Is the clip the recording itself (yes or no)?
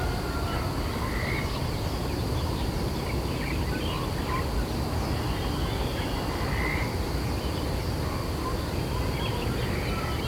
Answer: yes